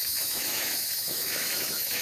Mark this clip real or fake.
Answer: fake